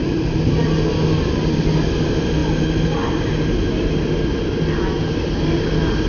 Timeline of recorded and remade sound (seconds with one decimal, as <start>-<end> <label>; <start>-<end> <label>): 0.0-6.1 recorded